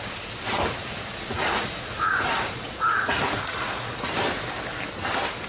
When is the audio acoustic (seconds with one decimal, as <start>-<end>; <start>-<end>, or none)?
0.0-0.8; 4.1-5.5